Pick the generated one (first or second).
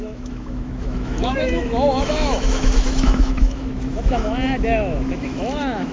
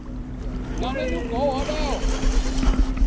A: first